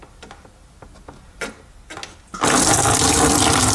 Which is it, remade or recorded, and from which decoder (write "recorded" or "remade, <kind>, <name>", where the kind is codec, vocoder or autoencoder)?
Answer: recorded